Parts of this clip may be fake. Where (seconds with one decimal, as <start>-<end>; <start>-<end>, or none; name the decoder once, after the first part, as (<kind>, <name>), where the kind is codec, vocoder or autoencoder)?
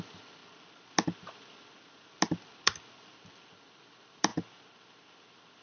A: 0.0-0.4 (vocoder, BigVGAN v2); 3.5-4.3